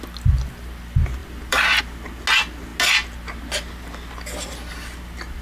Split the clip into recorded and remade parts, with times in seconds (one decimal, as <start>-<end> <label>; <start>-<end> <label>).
0.0-1.2 recorded; 1.2-1.8 remade; 1.8-5.4 recorded